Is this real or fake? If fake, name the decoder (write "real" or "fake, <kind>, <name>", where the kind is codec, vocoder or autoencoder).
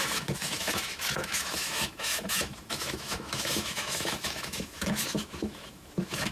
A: fake, autoencoder, DAC-VAE